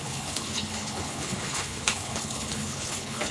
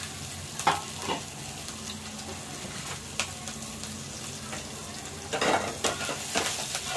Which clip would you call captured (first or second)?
second